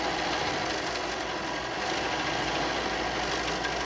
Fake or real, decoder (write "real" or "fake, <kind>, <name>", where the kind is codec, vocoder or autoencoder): real